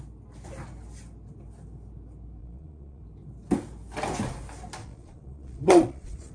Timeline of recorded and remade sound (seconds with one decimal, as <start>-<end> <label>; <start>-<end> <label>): 0.0-2.4 recorded; 2.4-3.0 remade; 3.0-4.8 recorded; 4.8-6.3 remade